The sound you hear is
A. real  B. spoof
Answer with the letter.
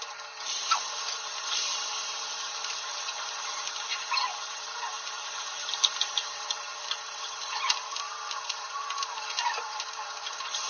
B